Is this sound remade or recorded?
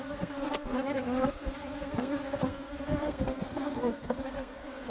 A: remade